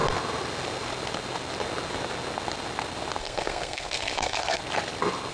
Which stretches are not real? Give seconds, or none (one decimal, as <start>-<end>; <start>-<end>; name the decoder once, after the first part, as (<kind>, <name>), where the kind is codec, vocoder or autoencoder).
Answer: 3.2-4.6 (codec, SNAC)